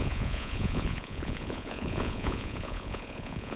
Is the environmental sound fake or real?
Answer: fake